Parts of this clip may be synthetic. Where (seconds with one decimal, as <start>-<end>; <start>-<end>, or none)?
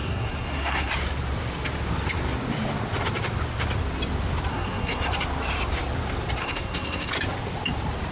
0.0-0.9; 4.5-5.1; 6.4-7.1